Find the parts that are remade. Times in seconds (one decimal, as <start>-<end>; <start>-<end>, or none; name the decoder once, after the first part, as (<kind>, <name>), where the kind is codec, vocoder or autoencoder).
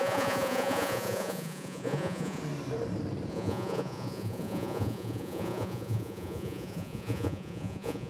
0.0-2.4 (vocoder, Vocos); 3.3-8.1